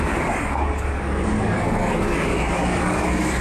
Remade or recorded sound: remade